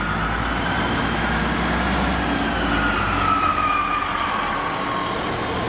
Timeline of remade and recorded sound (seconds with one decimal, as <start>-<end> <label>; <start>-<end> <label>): 0.0-3.5 recorded; 3.5-4.0 remade; 4.0-5.7 recorded